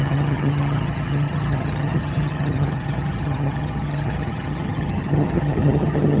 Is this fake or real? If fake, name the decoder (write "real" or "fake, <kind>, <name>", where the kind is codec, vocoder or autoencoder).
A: fake, vocoder, HiFi-GAN